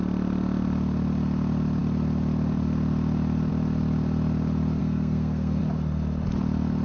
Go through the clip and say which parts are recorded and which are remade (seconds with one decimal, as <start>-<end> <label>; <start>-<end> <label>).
0.0-4.8 recorded; 4.8-5.6 remade; 5.6-6.8 recorded